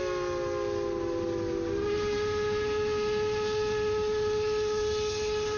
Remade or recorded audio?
recorded